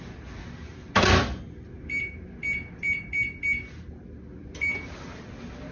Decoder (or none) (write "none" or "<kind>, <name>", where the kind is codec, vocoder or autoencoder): none